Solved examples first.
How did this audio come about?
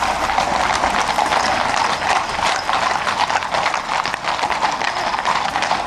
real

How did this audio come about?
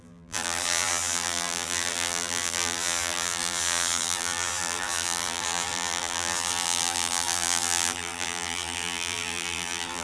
fake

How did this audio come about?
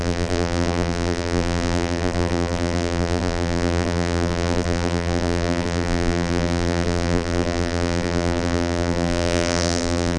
fake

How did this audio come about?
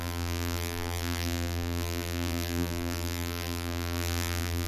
fake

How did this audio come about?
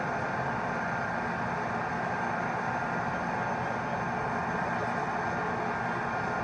real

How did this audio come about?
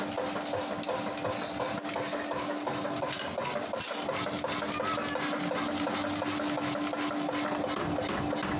real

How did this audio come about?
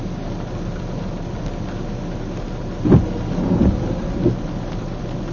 real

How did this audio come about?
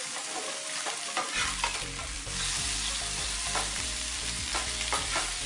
fake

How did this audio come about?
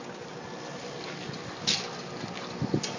real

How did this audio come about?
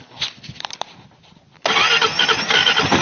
real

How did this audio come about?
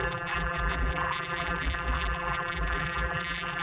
fake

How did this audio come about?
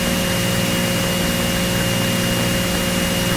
real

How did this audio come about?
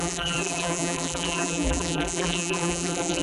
fake